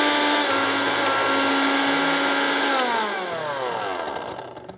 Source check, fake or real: real